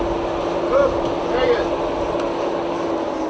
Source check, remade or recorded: recorded